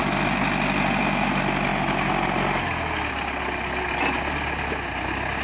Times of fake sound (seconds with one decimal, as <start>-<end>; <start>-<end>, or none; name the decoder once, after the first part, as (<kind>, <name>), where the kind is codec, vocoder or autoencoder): none